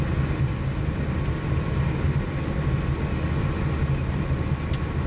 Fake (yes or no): no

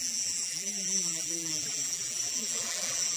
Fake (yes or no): yes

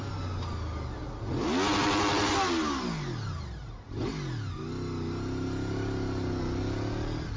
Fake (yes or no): no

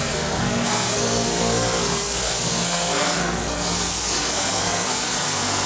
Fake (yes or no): yes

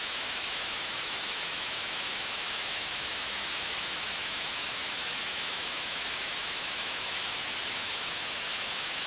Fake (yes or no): yes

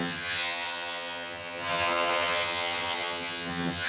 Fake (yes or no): yes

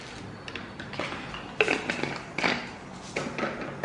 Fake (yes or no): no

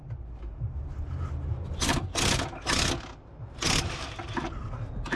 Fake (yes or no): no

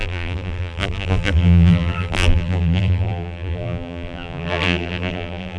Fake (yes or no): yes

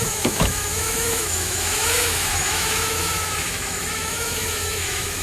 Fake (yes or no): yes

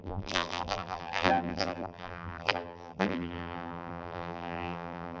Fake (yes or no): yes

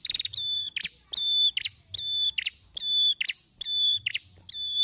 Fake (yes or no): no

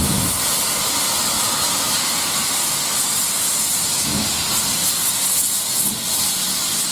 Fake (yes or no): no